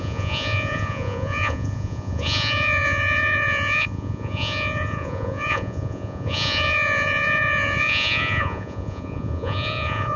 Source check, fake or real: fake